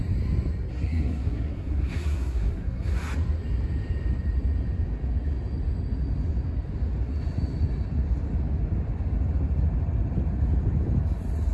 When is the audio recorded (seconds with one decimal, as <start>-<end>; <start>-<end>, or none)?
0.0-0.7; 3.0-11.5